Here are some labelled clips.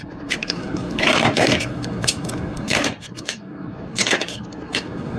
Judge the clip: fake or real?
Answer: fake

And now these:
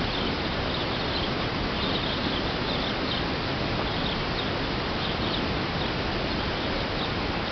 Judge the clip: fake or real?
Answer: real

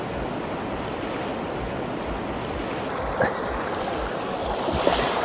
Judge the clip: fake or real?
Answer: real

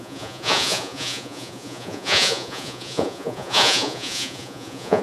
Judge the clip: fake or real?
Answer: fake